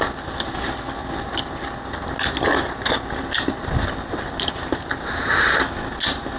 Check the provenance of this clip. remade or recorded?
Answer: recorded